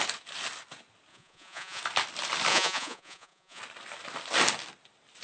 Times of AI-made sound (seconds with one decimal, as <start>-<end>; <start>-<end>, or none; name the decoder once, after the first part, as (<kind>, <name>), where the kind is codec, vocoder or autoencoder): 1.1-1.8 (vocoder, Vocos); 2.5-3.6